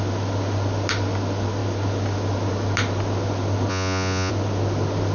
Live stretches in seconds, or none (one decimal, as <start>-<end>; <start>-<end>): 0.0-3.7; 4.3-5.1